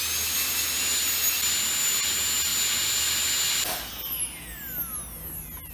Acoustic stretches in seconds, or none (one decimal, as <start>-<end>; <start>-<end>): 0.0-5.7